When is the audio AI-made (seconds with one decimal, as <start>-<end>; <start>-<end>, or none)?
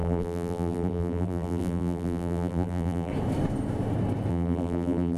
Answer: 0.0-3.1; 4.3-5.2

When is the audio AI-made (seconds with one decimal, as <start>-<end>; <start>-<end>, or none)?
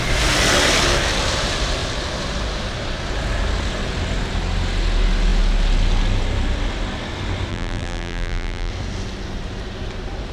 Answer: 7.5-8.7